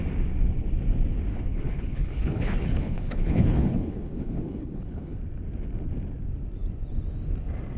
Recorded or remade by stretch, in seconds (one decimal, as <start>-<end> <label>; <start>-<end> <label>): 0.0-1.3 recorded; 1.3-5.2 remade; 5.2-7.8 recorded